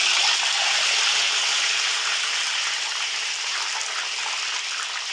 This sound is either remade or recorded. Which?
recorded